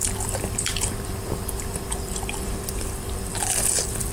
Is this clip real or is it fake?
fake